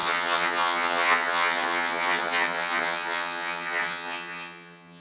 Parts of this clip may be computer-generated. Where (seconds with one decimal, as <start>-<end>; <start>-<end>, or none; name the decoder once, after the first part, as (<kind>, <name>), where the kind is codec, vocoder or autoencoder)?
0.0-5.0 (vocoder, HiFi-GAN)